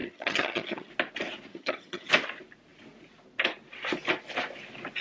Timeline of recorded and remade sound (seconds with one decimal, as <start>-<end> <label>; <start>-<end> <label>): 0.0-0.9 remade; 0.9-1.5 recorded; 1.5-2.1 remade; 2.1-5.0 recorded